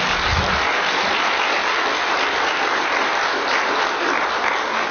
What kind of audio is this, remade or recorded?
recorded